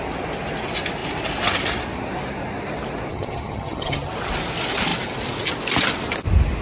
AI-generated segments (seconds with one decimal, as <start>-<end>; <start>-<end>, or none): 3.1-4.1